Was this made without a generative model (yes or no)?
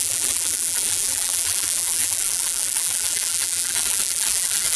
no